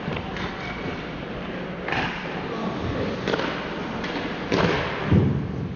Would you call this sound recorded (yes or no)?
yes